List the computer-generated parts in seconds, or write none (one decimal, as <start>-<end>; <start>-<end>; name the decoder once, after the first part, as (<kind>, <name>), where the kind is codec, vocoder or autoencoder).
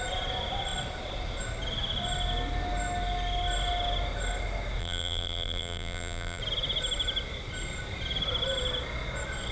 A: 4.8-6.4 (vocoder, BigVGAN v2)